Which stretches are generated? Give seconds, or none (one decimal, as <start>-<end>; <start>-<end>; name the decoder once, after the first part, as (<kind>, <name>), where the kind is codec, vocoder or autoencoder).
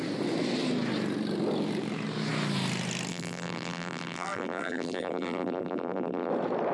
3.1-6.3 (vocoder, BigVGAN v2)